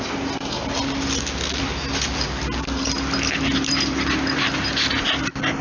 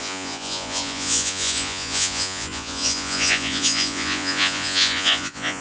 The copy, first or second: second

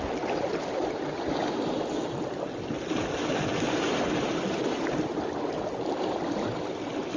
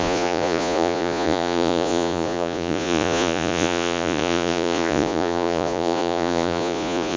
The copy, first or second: second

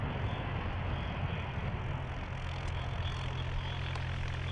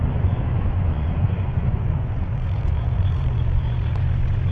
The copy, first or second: second